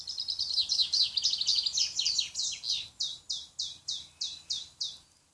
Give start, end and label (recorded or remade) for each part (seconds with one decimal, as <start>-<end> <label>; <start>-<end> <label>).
0.0-5.3 recorded